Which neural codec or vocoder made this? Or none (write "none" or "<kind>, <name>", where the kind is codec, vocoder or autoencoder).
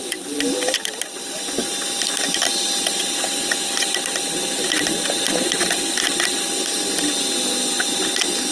none